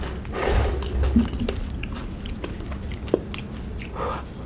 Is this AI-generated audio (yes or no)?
no